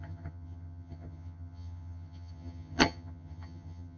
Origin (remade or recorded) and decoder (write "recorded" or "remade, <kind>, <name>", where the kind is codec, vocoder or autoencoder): remade, vocoder, HiFi-GAN